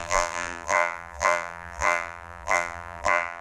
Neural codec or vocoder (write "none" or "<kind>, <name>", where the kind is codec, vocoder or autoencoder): vocoder, BigVGAN v2